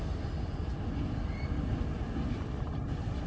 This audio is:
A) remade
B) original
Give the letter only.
B